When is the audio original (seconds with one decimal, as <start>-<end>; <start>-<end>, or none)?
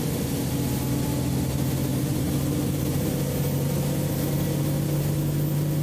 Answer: 0.0-1.9; 3.1-5.8